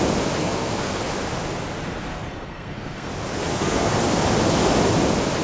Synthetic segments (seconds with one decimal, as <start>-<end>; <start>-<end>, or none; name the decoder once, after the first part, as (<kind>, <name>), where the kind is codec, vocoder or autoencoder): 0.4-1.0 (codec, SNAC); 2.0-3.1; 3.5-4.0